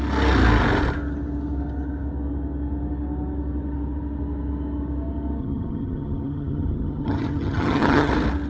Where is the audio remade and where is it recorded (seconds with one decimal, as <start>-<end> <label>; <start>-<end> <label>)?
0.0-5.4 recorded; 5.4-8.1 remade; 8.1-8.5 recorded